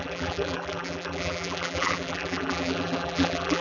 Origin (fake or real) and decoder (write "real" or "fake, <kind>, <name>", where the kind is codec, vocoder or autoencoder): fake, vocoder, BigVGAN v2